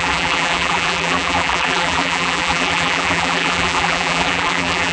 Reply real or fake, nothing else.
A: fake